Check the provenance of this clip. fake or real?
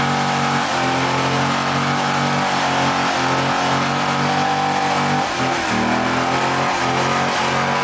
real